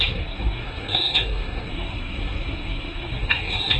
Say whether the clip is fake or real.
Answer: fake